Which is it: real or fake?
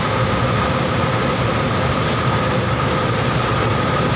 real